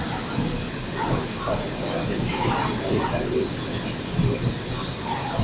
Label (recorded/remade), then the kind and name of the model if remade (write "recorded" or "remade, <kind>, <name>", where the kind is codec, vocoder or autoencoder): recorded